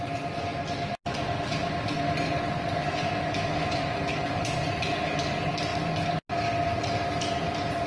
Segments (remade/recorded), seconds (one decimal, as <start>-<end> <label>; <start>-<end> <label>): 0.0-7.9 recorded